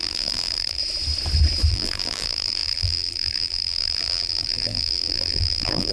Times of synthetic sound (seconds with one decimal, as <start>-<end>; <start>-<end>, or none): 0.0-0.8; 1.7-5.9